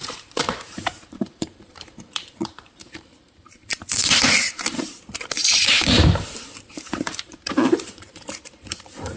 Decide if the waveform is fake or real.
fake